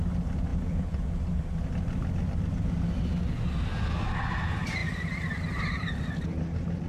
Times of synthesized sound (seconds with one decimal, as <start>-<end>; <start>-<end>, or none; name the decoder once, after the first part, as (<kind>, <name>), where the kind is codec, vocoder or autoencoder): 0.5-1.2 (vocoder, Vocos)